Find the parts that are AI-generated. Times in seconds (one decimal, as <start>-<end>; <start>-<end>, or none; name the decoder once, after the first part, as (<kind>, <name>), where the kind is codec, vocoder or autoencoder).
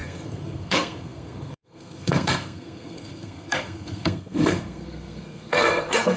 0.0-6.2 (codec, SNAC)